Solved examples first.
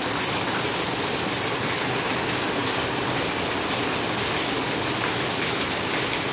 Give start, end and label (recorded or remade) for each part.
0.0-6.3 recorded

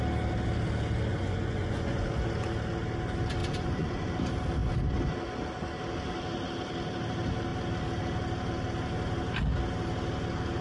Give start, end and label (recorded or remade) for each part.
0.0-1.1 recorded; 1.1-2.1 remade; 2.1-3.4 recorded; 3.4-4.1 remade; 4.1-10.6 recorded